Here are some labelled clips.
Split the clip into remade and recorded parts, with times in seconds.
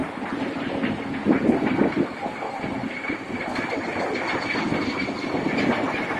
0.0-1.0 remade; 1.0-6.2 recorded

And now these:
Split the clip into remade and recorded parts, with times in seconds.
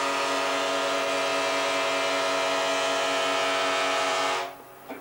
0.0-5.0 recorded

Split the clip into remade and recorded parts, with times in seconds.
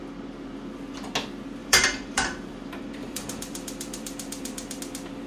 0.0-1.6 recorded; 1.6-4.8 remade; 4.8-5.3 recorded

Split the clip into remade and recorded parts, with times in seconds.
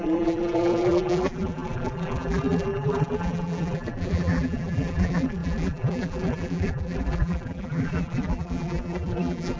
0.0-9.6 remade